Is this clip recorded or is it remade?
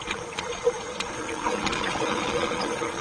remade